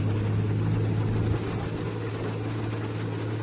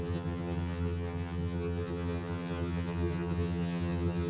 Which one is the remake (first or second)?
second